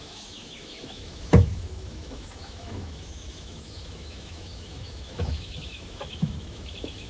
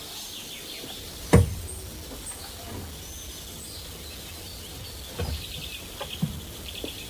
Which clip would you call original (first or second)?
second